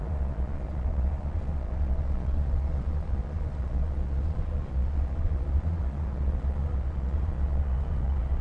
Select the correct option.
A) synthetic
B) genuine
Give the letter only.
A